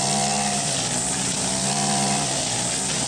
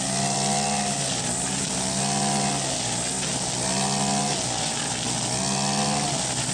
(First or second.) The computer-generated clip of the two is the first